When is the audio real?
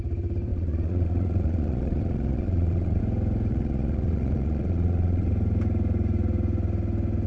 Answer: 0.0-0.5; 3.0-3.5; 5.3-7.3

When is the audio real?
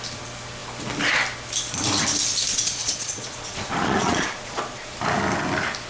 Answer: 0.0-2.5; 4.9-5.9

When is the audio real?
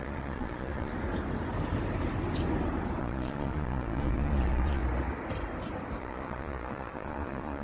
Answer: 0.9-3.0; 4.8-6.0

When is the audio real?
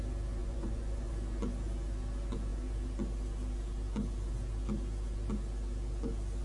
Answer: 0.0-0.4; 1.1-6.4